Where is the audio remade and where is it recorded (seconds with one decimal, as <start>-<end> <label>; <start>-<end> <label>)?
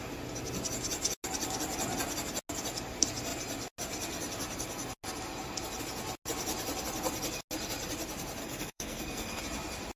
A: 0.0-8.4 recorded; 8.4-9.4 remade; 9.4-10.0 recorded